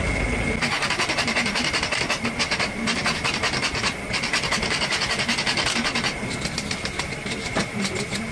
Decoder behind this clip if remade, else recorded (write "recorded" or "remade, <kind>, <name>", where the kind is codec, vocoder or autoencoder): recorded